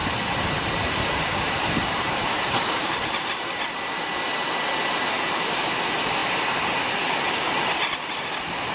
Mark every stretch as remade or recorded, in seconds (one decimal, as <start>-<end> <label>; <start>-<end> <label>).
0.0-3.1 remade; 3.1-6.2 recorded; 6.2-6.8 remade; 6.8-8.7 recorded